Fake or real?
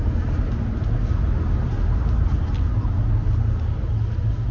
real